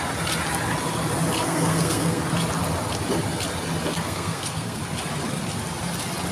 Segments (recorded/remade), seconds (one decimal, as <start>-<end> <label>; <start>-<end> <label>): 0.0-1.4 recorded; 1.4-2.2 remade; 2.2-3.8 recorded; 3.8-4.8 remade; 4.8-6.3 recorded